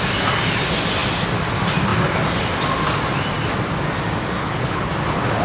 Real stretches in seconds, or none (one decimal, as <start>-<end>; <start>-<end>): 0.0-4.4; 4.9-5.4